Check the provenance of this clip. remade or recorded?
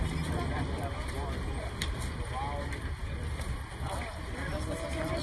recorded